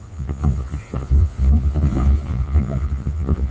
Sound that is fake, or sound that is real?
fake